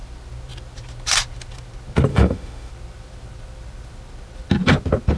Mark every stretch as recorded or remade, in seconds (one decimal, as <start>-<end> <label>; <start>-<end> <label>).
0.0-2.1 recorded; 2.1-2.7 remade; 2.7-5.2 recorded